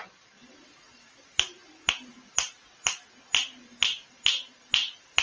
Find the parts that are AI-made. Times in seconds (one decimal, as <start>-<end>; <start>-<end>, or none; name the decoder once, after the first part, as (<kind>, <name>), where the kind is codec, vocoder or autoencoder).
none